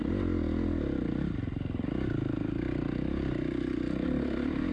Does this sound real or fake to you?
real